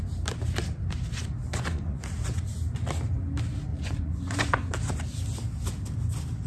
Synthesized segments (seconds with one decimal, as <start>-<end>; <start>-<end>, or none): 1.4-2.0; 3.7-4.7